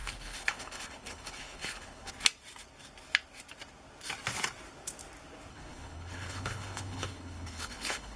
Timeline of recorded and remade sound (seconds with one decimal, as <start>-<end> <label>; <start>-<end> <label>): 0.0-2.1 remade; 2.1-5.5 recorded; 5.5-8.2 remade